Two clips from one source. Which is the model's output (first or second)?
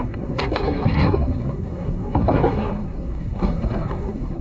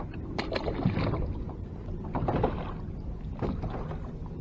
first